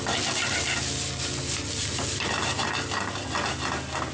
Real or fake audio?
real